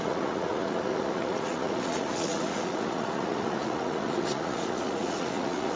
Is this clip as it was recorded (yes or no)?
no